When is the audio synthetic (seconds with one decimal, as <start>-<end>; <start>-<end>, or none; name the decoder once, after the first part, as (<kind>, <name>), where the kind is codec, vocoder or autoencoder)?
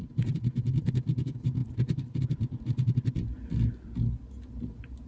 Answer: none